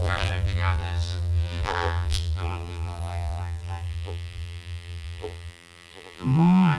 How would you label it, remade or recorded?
remade